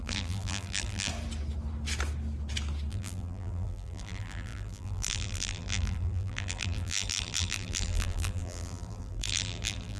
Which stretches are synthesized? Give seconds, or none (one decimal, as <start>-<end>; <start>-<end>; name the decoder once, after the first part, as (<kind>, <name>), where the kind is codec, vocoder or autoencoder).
0.0-1.1 (vocoder, BigVGAN v2); 2.9-10.0